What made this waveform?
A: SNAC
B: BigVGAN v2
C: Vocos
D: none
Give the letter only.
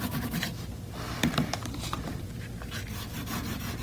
D